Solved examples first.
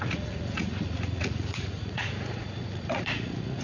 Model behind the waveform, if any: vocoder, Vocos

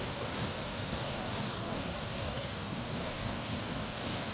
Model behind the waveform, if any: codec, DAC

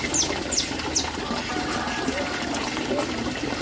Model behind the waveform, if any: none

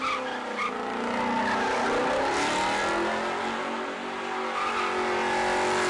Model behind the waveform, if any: none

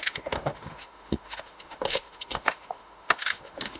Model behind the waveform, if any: autoencoder, DAC-VAE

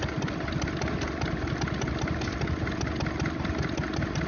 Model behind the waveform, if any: none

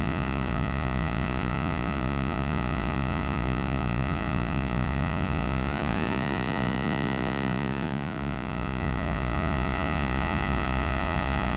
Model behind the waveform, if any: vocoder, Vocos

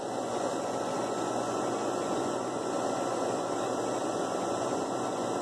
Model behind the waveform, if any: vocoder, Vocos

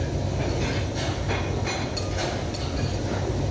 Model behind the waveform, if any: none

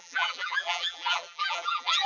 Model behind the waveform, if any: vocoder, BigVGAN v2